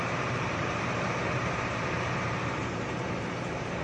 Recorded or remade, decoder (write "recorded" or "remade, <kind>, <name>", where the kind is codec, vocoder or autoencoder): remade, vocoder, BigVGAN v2